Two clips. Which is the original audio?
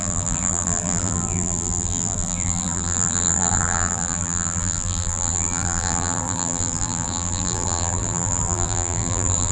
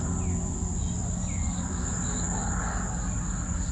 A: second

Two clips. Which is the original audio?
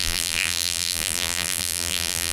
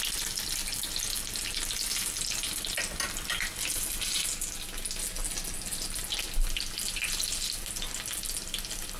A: second